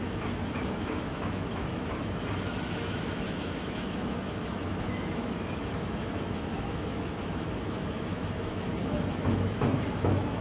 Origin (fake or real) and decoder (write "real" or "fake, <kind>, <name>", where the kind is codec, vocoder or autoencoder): fake, autoencoder, DAC-VAE